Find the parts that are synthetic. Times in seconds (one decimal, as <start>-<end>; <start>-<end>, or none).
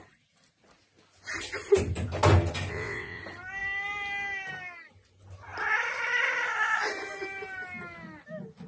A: 2.7-3.2